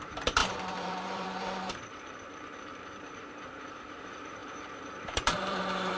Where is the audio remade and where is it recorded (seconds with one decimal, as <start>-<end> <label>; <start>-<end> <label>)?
0.0-6.0 remade